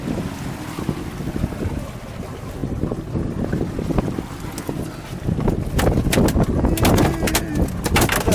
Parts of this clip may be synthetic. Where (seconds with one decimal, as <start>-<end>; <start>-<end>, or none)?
none